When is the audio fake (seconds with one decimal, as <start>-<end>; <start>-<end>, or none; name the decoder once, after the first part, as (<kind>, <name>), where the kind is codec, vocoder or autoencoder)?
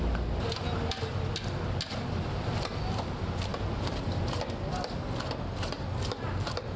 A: none